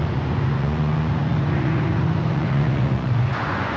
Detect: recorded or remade remade